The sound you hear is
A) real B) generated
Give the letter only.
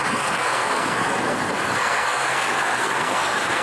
B